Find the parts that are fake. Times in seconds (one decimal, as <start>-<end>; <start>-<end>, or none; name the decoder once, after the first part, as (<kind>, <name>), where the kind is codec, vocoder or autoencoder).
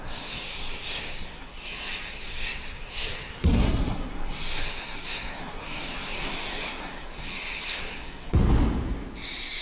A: 0.0-8.4 (codec, SNAC)